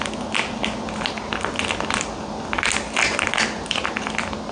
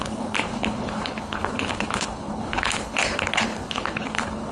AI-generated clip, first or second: second